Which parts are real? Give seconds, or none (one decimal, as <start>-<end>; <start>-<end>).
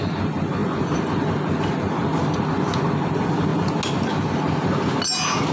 0.0-5.5